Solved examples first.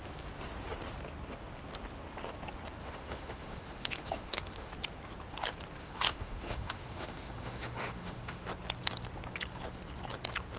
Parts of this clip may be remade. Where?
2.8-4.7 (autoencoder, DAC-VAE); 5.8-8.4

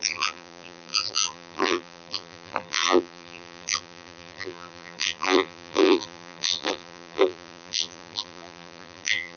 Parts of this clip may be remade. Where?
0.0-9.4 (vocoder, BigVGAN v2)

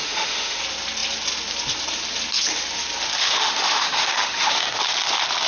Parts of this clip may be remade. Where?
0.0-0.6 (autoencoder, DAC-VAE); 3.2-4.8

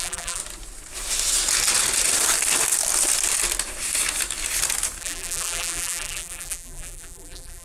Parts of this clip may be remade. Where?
0.0-0.4 (vocoder, BigVGAN v2); 5.0-7.6

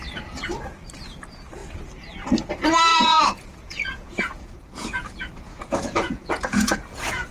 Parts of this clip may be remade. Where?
2.9-7.3 (vocoder, Vocos)

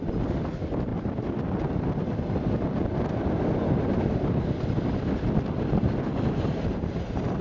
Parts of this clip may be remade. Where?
none

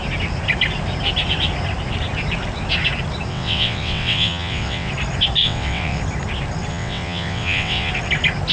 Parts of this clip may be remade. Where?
3.3-4.9 (vocoder, WaveNeXt); 5.4-6.0; 6.7-7.9